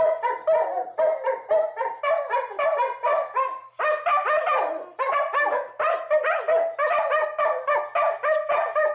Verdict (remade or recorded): recorded